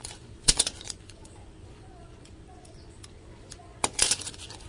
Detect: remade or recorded remade